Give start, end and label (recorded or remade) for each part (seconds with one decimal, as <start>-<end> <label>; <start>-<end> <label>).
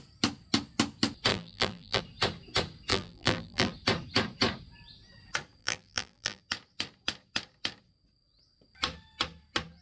0.0-1.3 recorded; 1.3-2.0 remade; 2.0-2.9 recorded; 2.9-3.7 remade; 3.7-5.6 recorded; 5.6-6.4 remade; 6.4-9.8 recorded